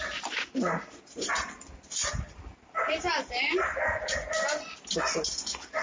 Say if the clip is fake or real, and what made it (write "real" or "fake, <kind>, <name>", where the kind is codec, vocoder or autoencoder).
real